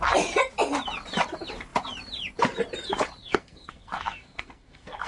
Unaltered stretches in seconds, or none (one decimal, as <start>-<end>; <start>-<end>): 0.0-3.2